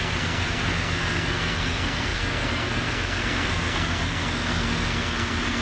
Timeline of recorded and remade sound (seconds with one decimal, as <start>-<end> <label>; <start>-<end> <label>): 0.0-5.6 remade